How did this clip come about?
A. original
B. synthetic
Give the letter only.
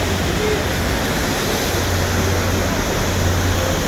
A